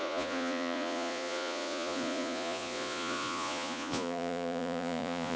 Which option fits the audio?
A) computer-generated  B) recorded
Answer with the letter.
A